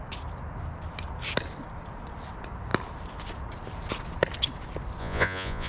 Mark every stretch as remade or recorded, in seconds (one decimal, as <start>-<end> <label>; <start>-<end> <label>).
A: 0.0-5.0 recorded; 5.0-5.7 remade